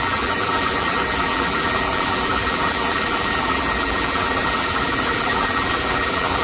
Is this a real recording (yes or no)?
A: no